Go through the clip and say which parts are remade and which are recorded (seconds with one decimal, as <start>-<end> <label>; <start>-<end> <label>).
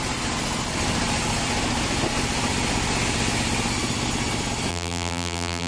0.0-4.7 recorded; 4.7-5.7 remade